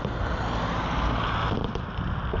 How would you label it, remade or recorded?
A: remade